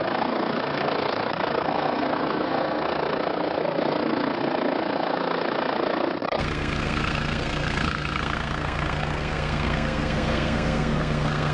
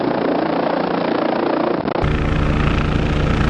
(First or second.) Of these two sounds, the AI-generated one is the first